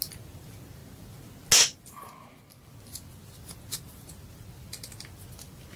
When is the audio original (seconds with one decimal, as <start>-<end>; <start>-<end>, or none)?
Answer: 0.0-5.8